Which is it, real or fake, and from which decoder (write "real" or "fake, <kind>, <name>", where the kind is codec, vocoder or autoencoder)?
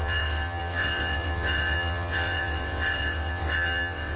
fake, vocoder, WaveNeXt